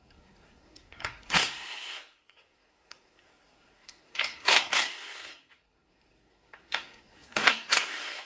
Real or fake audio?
fake